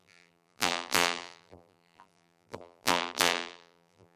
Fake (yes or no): yes